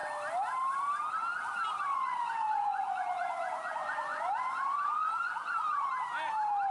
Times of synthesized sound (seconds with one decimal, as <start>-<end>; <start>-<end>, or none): 1.9-5.9